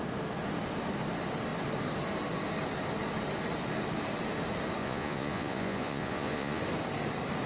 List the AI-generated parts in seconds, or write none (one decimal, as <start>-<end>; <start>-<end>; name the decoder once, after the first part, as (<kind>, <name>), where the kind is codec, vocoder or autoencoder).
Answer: 4.8-6.6 (vocoder, Vocos)